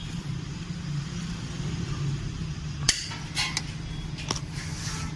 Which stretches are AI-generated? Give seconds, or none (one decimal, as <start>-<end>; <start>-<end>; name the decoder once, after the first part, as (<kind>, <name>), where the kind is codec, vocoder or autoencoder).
0.0-3.1 (vocoder, BigVGAN v2)